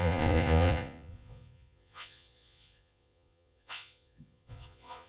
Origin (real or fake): fake